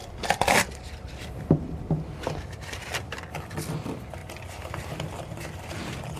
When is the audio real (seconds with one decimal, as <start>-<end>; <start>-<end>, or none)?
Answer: 1.6-6.2